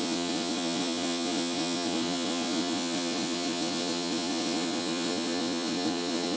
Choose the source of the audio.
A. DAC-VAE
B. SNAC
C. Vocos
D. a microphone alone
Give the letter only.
C